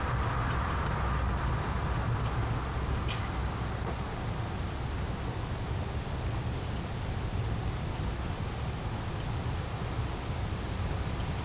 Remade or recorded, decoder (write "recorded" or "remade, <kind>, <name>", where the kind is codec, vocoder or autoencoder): recorded